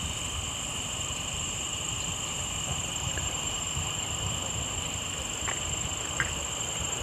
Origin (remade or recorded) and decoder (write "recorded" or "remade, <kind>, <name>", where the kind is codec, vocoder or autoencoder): remade, vocoder, BigVGAN v2